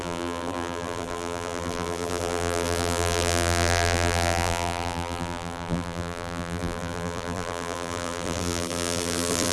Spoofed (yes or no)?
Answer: yes